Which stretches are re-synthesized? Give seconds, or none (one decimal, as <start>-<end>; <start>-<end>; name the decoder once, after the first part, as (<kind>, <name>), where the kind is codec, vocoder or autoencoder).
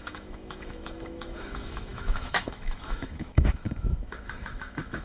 0.0-5.0 (autoencoder, DAC-VAE)